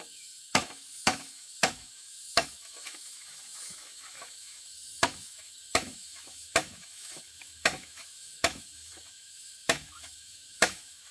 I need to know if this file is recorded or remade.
remade